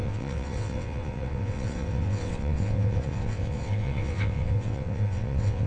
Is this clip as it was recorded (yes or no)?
no